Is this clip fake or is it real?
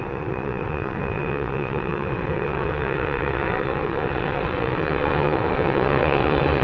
fake